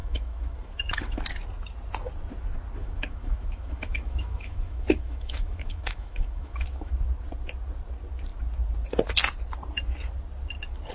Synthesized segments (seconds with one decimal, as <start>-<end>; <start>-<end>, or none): 0.0-1.2; 2.8-6.9